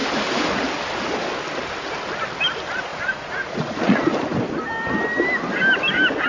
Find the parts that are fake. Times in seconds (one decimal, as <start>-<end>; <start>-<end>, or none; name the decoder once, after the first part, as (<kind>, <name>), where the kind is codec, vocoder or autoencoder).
2.9-4.1 (vocoder, Vocos)